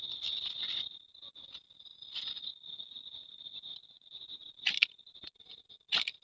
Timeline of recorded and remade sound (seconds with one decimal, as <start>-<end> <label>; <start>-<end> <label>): 0.0-3.9 recorded; 3.9-4.5 remade; 4.5-6.2 recorded